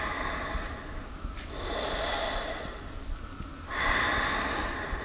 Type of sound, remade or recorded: recorded